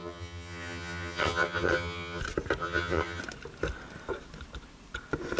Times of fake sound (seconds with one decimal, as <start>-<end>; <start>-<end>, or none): 0.0-2.2; 2.6-3.2